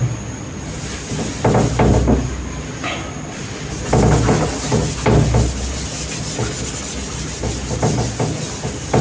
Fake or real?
real